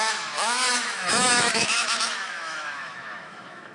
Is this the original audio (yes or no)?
no